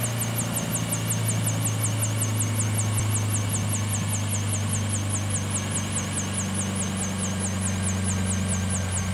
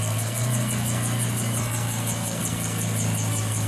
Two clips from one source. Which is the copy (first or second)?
second